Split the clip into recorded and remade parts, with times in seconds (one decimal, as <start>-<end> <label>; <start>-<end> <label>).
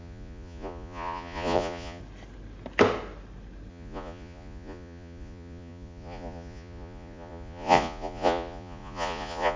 0.0-2.0 remade; 2.0-3.7 recorded; 3.7-9.6 remade